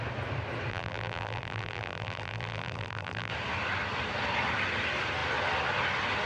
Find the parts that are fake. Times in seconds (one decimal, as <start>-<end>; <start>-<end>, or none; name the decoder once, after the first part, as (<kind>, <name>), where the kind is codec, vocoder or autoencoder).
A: 0.7-3.3 (vocoder, BigVGAN v2)

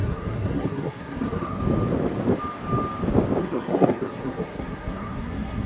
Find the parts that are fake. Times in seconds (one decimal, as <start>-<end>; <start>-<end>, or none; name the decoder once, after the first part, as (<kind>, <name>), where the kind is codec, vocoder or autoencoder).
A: 0.0-1.6 (codec, SNAC); 3.4-5.7

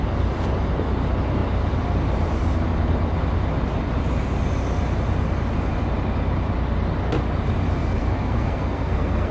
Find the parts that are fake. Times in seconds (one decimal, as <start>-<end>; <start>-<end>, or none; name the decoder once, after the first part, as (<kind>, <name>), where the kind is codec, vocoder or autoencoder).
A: 7.8-9.3 (codec, SNAC)

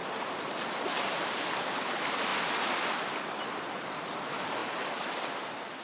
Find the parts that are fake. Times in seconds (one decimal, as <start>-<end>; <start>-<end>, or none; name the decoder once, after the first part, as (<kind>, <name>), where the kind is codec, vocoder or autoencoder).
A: 0.0-2.3 (vocoder, BigVGAN v2); 3.4-4.6

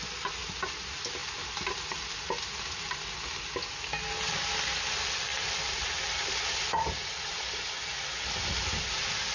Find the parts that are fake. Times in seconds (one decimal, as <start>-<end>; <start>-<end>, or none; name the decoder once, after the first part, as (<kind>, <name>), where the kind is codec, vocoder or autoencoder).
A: none

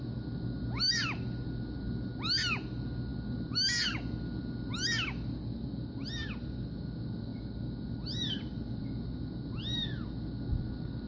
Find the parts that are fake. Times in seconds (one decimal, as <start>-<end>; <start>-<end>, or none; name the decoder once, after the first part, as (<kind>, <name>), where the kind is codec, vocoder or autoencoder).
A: none

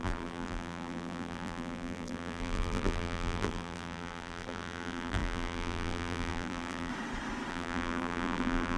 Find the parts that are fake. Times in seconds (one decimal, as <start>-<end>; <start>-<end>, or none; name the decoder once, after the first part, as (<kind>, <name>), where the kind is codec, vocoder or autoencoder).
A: 0.0-6.9 (vocoder, BigVGAN v2); 7.5-8.8

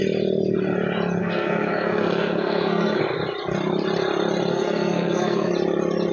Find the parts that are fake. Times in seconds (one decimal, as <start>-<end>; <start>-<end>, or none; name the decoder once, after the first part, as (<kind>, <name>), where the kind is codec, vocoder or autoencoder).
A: 1.2-3.0 (codec, SNAC); 4.5-5.5